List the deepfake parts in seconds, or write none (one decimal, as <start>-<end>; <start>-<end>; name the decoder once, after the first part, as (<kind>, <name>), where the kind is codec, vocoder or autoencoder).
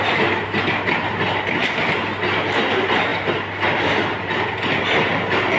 none